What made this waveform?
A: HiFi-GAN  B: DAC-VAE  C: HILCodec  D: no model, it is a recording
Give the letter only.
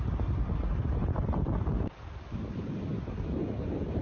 D